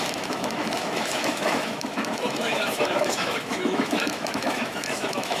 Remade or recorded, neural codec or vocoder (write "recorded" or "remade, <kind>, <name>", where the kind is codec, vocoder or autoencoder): remade, autoencoder, DAC-VAE